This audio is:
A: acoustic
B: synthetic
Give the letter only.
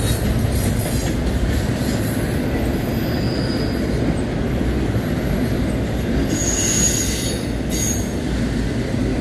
A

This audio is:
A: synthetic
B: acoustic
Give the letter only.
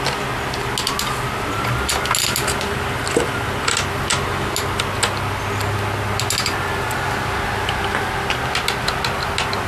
B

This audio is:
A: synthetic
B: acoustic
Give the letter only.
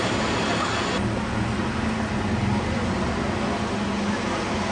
B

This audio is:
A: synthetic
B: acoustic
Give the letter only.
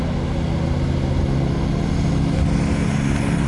B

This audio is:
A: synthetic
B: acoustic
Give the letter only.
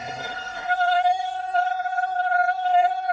A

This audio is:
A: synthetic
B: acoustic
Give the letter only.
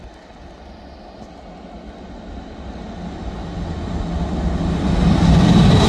B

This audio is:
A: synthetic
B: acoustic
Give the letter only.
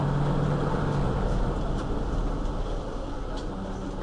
B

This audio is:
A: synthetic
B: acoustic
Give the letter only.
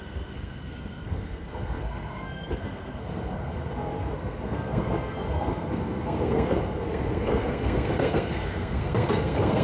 A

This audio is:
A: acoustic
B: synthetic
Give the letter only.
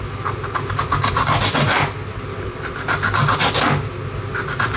A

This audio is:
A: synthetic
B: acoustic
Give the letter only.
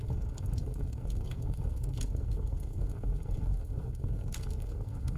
A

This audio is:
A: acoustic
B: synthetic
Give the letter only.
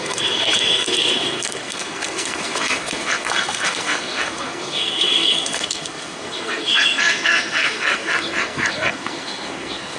B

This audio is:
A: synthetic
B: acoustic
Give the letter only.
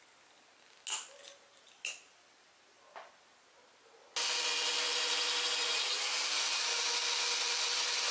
B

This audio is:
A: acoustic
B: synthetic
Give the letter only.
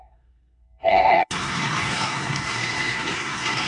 B